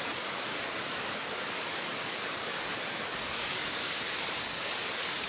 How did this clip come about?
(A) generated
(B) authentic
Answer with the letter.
A